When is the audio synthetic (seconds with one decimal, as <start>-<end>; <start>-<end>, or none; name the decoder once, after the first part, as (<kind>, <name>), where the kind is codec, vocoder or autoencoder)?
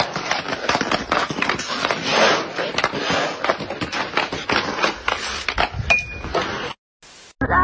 none